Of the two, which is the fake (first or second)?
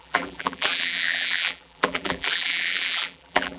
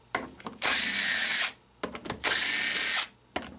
first